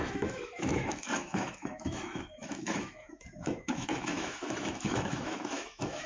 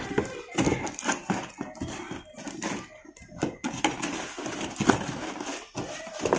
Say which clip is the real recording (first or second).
second